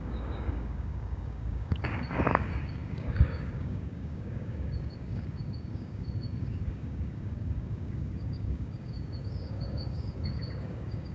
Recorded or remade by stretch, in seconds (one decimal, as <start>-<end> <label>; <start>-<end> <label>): 0.0-11.1 remade